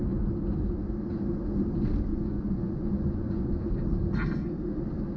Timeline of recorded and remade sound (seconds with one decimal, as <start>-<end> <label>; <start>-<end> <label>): 0.0-2.1 recorded; 2.1-3.6 remade; 3.6-5.2 recorded